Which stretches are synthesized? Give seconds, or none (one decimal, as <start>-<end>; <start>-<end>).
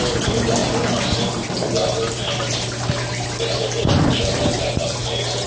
none